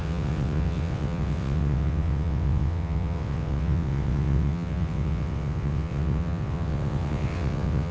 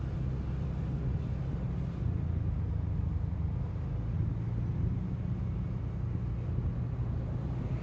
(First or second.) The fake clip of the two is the first